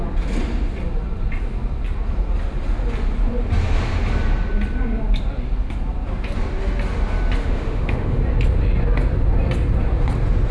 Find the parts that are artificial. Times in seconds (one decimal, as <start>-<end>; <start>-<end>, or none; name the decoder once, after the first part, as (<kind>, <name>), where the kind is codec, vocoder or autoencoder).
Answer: 7.4-8.2 (autoencoder, DAC-VAE)